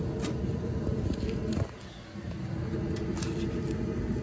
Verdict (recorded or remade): recorded